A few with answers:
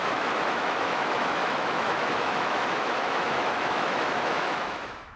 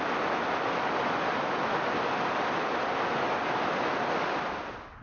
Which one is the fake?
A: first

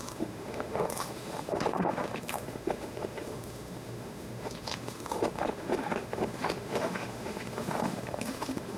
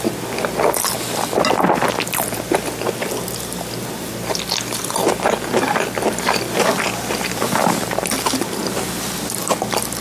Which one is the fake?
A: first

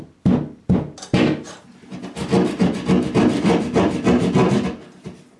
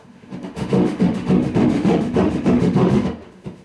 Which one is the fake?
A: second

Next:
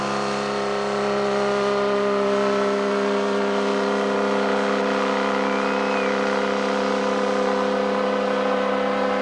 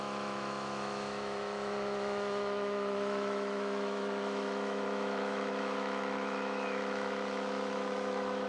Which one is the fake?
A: second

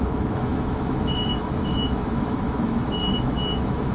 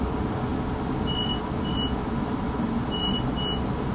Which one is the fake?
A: first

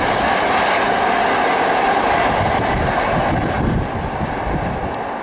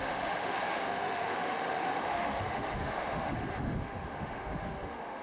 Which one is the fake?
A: second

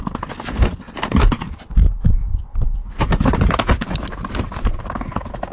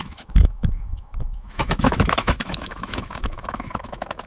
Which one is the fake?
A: second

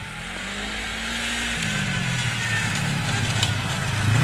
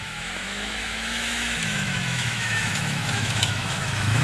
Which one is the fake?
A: second